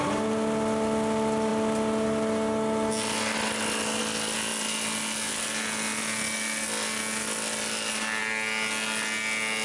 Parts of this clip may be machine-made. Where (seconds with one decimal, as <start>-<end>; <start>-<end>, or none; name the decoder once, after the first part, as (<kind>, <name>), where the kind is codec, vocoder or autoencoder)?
none

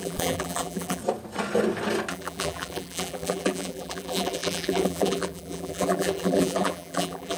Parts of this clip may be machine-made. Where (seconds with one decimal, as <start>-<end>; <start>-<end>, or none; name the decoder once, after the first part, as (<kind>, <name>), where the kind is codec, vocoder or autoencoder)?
0.0-1.0 (vocoder, BigVGAN v2); 2.1-7.4

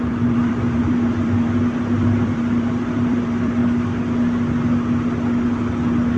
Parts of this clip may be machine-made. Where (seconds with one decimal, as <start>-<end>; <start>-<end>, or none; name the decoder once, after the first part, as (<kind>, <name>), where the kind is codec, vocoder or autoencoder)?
0.0-3.6 (vocoder, BigVGAN v2)

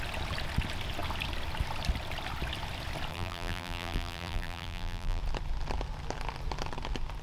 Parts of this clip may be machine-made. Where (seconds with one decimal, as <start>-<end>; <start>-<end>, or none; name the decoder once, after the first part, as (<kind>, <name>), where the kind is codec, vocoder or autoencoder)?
3.1-5.2 (vocoder, BigVGAN v2)